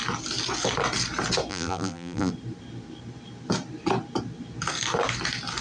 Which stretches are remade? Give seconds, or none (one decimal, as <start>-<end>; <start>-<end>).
1.5-2.3